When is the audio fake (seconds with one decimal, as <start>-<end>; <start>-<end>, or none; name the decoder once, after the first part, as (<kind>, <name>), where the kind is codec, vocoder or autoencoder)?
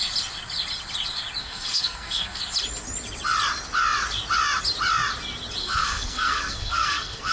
1.4-2.4 (codec, SNAC); 5.6-7.3